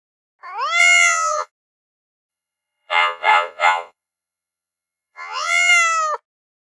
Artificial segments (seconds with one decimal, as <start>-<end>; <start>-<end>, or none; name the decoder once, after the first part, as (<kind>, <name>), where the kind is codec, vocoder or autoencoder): 0.8-1.5 (vocoder, Vocos); 2.3-5.7